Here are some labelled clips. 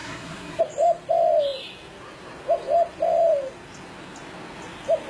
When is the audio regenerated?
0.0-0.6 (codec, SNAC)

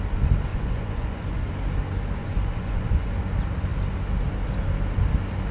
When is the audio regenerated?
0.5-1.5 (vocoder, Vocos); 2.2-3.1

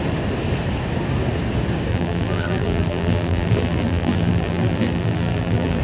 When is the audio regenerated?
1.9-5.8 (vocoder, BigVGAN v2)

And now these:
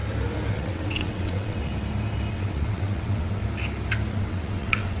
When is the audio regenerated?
0.5-1.7 (vocoder, WaveNeXt); 2.3-3.4; 4.1-5.0

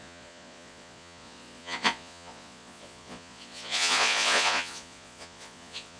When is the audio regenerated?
0.0-6.0 (vocoder, Vocos)

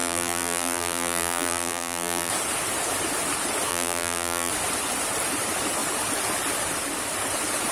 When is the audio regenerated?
0.0-2.3 (vocoder, BigVGAN v2); 3.7-4.5